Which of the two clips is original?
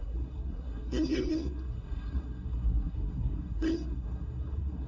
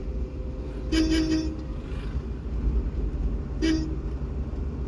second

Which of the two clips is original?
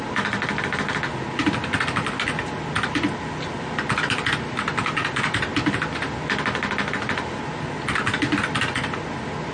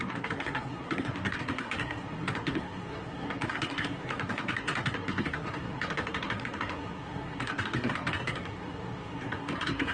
first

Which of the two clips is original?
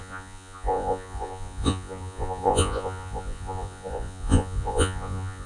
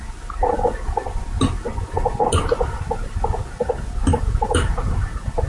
second